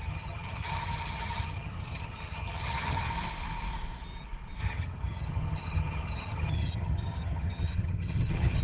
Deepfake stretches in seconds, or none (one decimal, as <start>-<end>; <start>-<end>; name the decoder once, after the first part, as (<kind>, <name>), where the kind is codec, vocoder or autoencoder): 0.0-3.1 (vocoder, HiFi-GAN); 4.6-8.6